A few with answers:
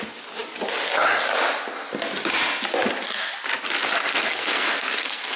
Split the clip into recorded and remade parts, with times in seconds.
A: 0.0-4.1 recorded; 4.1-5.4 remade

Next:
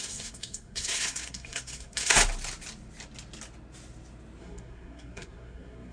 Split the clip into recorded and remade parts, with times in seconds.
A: 0.0-2.2 remade; 2.2-4.4 recorded; 4.4-5.9 remade

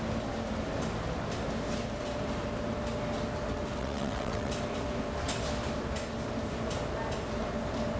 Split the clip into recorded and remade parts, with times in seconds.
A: 0.0-3.8 recorded; 3.8-4.5 remade; 4.5-8.0 recorded

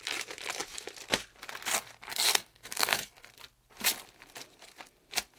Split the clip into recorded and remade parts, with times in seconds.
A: 0.0-2.1 recorded; 2.1-3.3 remade; 3.3-5.4 recorded